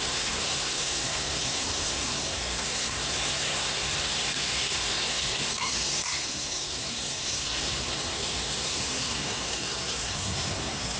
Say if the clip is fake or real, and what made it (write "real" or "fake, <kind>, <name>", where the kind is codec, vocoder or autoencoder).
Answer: fake, codec, SNAC